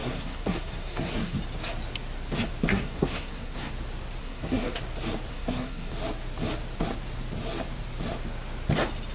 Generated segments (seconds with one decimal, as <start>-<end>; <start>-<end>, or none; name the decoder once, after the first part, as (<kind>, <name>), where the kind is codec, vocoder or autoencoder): 0.0-1.4 (codec, SNAC); 2.7-3.7; 4.2-4.8; 5.3-5.9